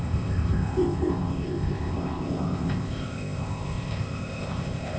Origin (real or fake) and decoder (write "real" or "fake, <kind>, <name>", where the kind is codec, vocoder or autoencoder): fake, codec, ZipCodec